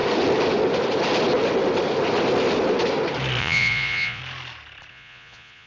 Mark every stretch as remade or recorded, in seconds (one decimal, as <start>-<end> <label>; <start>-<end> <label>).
0.0-3.4 recorded; 3.4-4.2 remade; 4.2-4.9 recorded; 4.9-5.7 remade